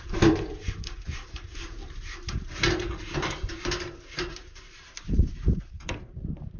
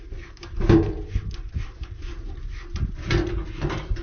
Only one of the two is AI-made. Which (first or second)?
first